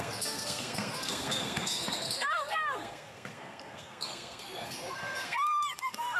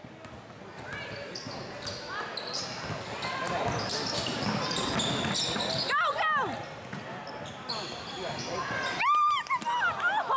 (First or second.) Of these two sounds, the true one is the second